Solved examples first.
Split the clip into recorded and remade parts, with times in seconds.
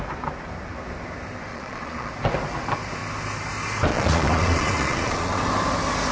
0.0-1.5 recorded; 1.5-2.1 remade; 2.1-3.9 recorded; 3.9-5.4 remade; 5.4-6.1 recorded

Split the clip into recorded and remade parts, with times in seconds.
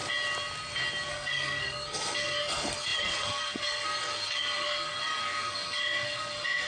0.0-1.1 recorded; 1.1-6.7 remade